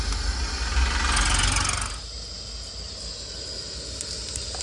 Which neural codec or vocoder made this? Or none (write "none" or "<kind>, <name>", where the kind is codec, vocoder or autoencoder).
none